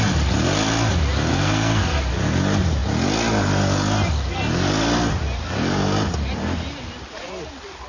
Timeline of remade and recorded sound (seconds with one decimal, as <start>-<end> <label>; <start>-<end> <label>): 0.0-1.3 recorded; 1.3-2.0 remade; 2.0-7.9 recorded